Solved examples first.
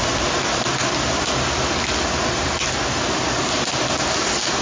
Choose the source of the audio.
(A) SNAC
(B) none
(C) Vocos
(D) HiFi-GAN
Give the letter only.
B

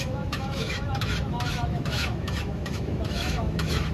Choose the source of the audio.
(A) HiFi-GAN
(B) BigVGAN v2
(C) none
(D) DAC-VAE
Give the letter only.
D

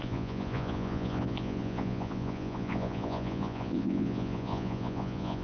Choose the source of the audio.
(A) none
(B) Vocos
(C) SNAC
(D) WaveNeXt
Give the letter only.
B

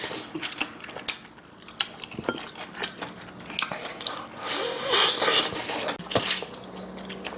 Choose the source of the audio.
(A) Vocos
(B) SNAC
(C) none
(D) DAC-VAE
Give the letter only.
C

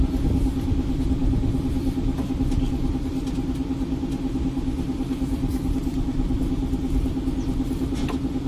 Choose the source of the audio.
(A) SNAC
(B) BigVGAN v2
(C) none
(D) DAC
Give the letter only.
C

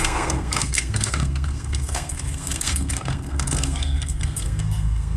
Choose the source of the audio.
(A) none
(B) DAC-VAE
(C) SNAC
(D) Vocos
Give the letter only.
C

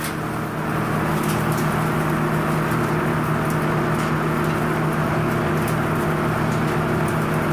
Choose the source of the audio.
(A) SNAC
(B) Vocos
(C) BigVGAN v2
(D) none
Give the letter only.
D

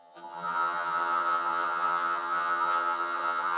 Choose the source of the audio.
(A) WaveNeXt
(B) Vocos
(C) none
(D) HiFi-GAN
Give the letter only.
D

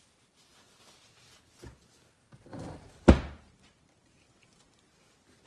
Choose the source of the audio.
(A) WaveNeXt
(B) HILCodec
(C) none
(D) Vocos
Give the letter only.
C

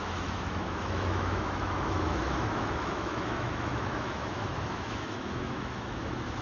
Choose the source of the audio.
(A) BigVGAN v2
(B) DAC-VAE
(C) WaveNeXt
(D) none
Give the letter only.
B